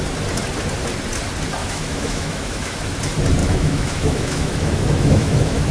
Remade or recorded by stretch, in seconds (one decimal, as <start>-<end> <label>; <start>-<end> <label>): 0.0-1.6 recorded; 1.6-3.0 remade; 3.0-3.4 recorded; 3.4-5.7 remade